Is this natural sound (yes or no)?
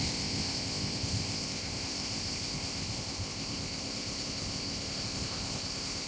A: no